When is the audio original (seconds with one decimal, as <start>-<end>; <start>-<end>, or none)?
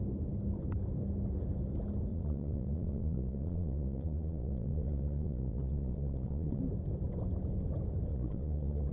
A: 0.0-2.1; 6.6-8.1